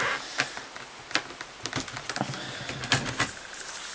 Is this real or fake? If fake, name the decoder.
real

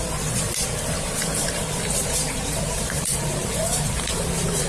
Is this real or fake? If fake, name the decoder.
fake, vocoder, BigVGAN v2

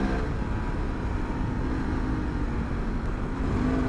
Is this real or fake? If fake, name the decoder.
real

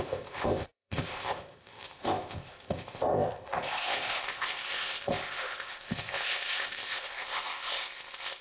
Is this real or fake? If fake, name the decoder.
fake, codec, ZipCodec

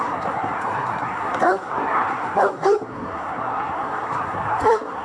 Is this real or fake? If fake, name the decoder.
fake, codec, SNAC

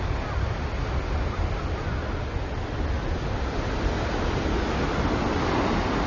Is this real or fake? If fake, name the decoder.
real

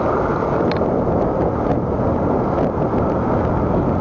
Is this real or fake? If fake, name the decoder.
real